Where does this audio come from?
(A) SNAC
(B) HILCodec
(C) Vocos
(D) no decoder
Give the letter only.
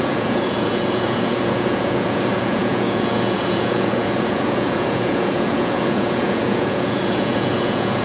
C